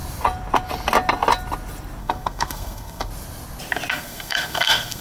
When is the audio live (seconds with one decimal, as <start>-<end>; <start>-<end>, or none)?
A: 0.0-2.0; 3.1-3.9

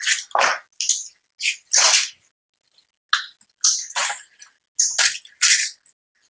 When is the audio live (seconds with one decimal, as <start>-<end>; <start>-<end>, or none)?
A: 0.0-6.4